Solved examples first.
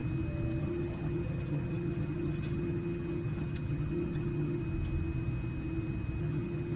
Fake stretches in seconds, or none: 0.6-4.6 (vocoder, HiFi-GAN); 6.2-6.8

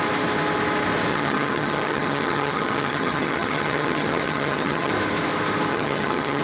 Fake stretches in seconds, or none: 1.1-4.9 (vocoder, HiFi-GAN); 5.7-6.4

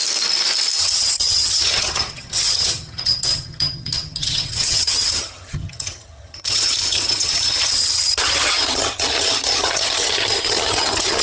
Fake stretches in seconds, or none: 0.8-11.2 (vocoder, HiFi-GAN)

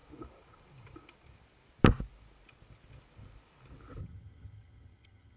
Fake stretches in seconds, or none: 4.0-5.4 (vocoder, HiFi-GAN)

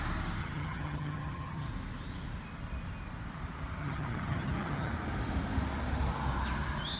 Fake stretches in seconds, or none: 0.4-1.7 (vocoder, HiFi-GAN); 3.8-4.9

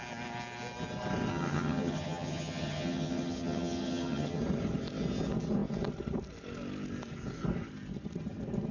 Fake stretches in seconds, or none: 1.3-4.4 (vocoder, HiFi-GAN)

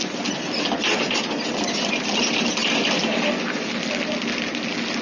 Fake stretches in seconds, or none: none